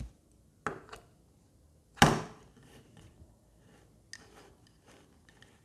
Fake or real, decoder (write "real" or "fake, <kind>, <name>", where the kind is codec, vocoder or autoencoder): real